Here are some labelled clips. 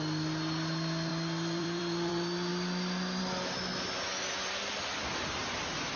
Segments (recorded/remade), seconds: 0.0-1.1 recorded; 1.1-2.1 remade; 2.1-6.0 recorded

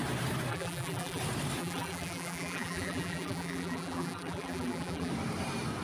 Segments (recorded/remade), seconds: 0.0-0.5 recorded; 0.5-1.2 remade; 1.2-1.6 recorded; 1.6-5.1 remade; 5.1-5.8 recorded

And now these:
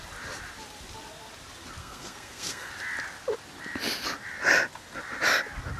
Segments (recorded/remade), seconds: 0.0-1.8 recorded; 1.8-2.7 remade; 2.7-5.8 recorded

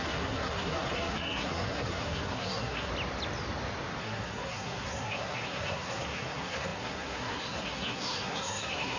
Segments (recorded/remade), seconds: 0.0-2.9 remade; 2.9-4.0 recorded; 4.0-9.0 remade